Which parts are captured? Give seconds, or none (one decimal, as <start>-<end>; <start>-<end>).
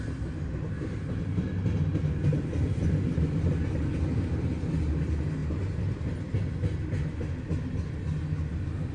0.0-8.9